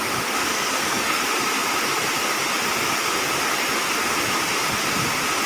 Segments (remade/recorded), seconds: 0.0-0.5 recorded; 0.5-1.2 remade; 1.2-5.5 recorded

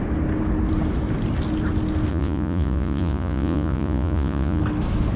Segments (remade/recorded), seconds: 0.0-2.1 recorded; 2.1-4.6 remade; 4.6-5.2 recorded

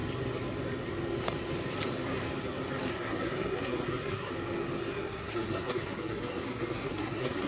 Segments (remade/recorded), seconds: 0.0-2.9 recorded; 2.9-4.3 remade; 4.3-4.9 recorded; 4.9-7.5 remade